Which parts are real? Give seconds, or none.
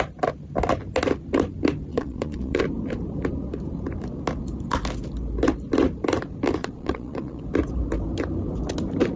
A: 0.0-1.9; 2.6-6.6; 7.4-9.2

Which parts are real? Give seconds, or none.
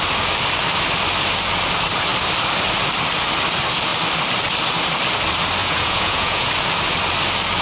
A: 0.0-5.6; 6.5-7.6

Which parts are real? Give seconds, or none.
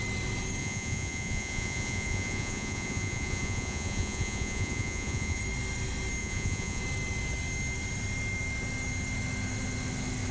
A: 0.0-0.6; 5.4-6.2; 6.8-10.3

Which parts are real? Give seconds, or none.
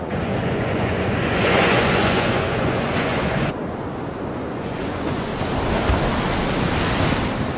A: 3.6-4.3; 5.3-7.6